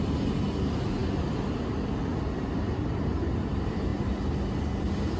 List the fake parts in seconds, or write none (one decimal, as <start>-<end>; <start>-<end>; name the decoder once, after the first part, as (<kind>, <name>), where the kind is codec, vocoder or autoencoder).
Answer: none

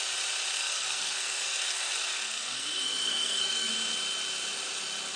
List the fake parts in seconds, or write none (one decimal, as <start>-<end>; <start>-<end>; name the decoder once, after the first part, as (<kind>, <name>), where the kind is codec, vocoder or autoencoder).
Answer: 0.6-3.7 (codec, SNAC)